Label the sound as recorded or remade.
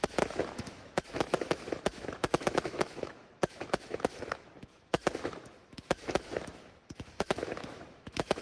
remade